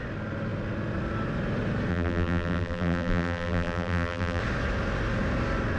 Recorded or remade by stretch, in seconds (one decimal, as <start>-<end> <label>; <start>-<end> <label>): 0.0-1.9 recorded; 1.9-4.4 remade; 4.4-5.8 recorded